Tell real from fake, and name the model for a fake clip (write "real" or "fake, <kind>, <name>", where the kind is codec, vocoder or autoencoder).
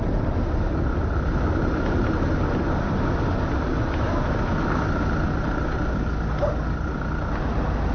real